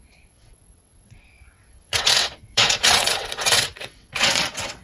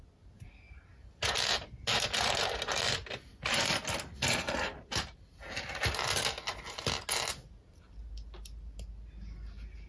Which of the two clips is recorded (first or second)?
second